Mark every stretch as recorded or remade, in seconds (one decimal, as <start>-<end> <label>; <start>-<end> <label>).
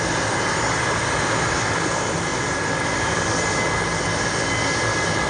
0.0-5.3 recorded